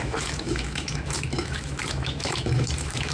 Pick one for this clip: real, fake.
fake